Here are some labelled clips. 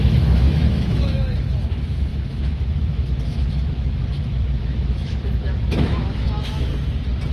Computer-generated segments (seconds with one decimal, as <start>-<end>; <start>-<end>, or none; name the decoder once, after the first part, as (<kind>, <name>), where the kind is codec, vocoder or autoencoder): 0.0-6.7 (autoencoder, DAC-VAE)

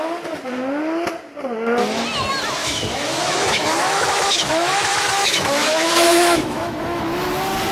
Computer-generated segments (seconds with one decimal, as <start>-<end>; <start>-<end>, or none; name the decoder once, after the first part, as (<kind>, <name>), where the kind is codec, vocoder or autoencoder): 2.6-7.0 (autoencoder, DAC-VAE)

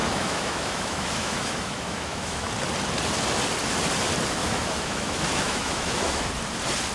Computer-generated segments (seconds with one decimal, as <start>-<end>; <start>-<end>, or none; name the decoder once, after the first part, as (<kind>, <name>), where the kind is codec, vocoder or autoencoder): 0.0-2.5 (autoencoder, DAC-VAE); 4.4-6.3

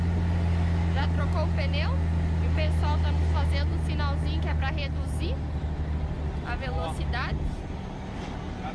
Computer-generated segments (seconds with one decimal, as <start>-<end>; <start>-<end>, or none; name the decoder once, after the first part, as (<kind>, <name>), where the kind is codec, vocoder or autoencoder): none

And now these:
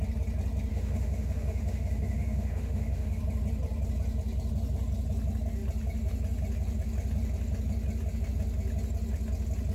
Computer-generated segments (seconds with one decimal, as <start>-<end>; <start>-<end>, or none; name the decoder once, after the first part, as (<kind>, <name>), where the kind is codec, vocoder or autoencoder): 0.7-3.2 (autoencoder, DAC-VAE)